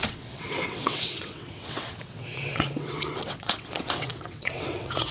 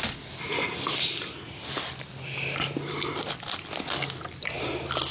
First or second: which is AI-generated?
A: first